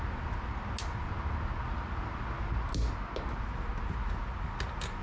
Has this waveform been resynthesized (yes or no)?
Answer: no